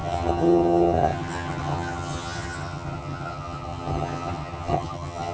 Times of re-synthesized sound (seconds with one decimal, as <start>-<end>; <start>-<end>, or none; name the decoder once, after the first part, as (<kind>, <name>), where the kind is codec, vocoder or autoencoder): 0.0-5.3 (vocoder, HiFi-GAN)